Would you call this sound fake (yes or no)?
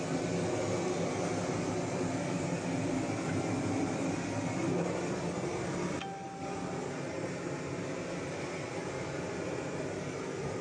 no